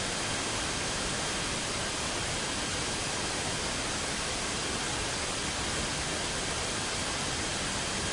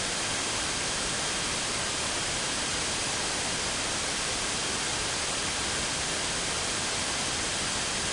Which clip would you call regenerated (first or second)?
second